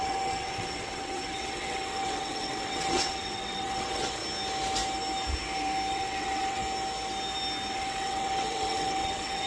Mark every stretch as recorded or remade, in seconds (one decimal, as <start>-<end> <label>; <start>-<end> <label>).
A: 0.0-4.2 remade; 4.2-5.9 recorded; 5.9-6.6 remade; 6.6-7.7 recorded; 7.7-9.5 remade

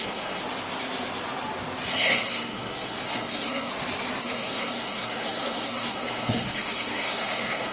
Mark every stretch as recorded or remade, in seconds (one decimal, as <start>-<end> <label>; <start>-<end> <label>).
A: 0.0-0.4 remade; 0.4-1.9 recorded; 1.9-3.7 remade; 3.7-4.2 recorded; 4.2-7.7 remade

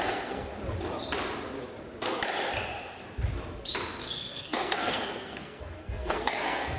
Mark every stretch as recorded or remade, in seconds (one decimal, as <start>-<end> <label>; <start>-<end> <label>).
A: 0.0-0.5 remade; 0.5-4.0 recorded; 4.0-6.8 remade